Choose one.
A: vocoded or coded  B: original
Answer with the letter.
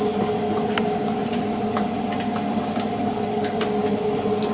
B